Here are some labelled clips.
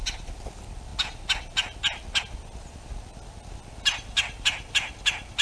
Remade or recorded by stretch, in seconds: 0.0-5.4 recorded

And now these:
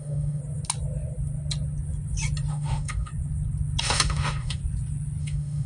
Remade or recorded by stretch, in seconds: 0.0-0.4 remade; 0.4-2.5 recorded; 2.5-3.1 remade; 3.1-3.8 recorded; 3.8-4.6 remade; 4.6-5.2 recorded; 5.2-5.7 remade

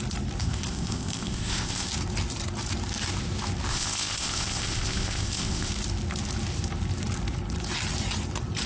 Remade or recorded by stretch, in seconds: 0.0-0.4 recorded; 0.4-1.9 remade; 1.9-3.7 recorded; 3.7-5.7 remade; 5.7-8.7 recorded

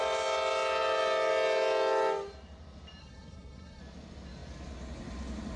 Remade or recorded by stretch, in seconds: 0.0-3.0 recorded; 3.0-3.8 remade; 3.8-5.6 recorded

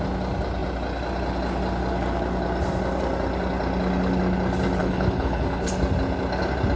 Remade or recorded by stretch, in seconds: 0.0-4.8 recorded; 4.8-5.7 remade; 5.7-6.8 recorded

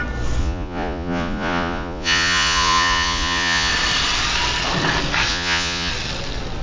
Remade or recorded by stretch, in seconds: 0.0-0.4 recorded; 0.4-3.7 remade; 3.7-5.3 recorded; 5.3-5.9 remade; 5.9-6.6 recorded

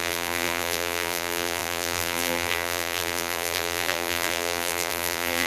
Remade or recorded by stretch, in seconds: 0.0-5.5 remade